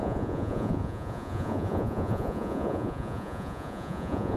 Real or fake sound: fake